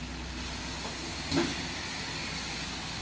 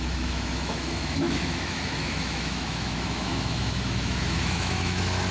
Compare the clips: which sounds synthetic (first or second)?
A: second